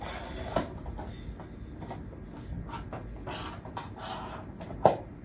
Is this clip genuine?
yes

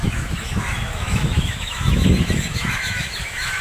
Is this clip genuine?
no